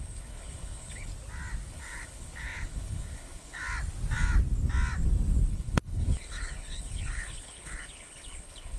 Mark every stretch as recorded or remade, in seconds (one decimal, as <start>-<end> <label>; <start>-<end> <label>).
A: 0.0-1.1 remade; 1.1-1.7 recorded; 1.7-3.6 remade; 3.6-5.5 recorded; 5.5-8.8 remade